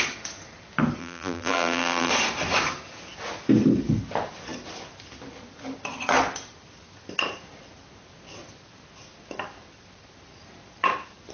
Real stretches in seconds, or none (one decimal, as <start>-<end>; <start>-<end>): 0.0-1.0; 2.1-11.3